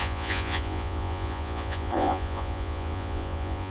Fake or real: fake